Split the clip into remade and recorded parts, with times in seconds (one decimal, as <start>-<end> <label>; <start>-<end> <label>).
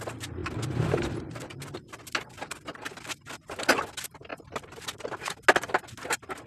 0.0-4.3 recorded; 4.3-5.0 remade; 5.0-6.5 recorded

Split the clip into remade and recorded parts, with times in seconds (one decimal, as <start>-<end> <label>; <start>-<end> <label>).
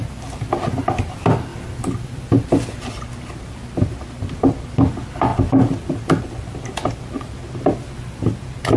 0.0-5.3 recorded; 5.3-7.4 remade; 7.4-8.8 recorded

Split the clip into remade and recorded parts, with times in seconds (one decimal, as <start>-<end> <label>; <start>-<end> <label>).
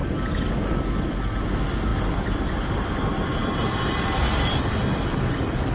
0.0-1.9 recorded; 1.9-2.7 remade; 2.7-3.4 recorded; 3.4-5.7 remade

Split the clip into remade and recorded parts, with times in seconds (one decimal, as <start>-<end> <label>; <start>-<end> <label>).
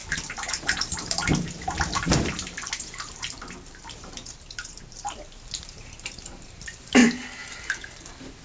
0.0-7.0 remade; 7.0-7.5 recorded; 7.5-8.4 remade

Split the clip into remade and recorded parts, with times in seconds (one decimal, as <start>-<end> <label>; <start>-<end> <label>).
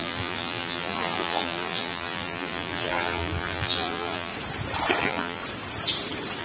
0.0-4.3 remade; 4.3-5.0 recorded; 5.0-5.4 remade; 5.4-6.4 recorded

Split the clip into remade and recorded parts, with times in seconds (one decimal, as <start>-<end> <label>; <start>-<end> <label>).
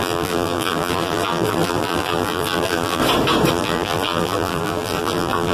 0.0-3.0 remade; 3.0-3.5 recorded; 3.5-5.5 remade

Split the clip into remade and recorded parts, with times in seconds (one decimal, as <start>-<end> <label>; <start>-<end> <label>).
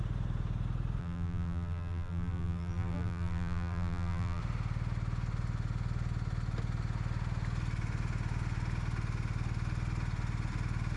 0.0-1.0 recorded; 1.0-4.4 remade; 4.4-11.0 recorded